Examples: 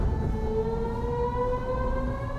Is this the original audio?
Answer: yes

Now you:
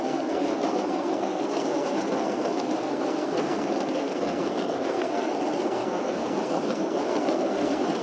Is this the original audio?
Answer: no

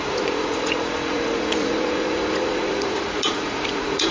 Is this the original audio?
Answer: no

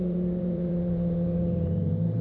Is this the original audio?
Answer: no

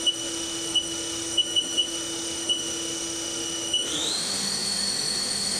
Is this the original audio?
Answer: no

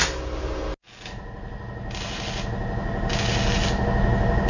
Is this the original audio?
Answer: yes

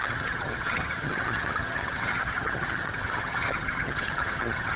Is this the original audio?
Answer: no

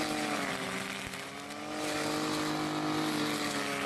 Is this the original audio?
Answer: yes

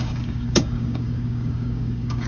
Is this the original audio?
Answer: no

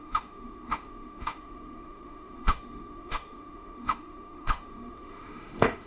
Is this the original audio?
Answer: no